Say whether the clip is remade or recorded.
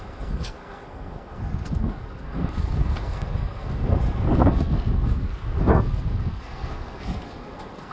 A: remade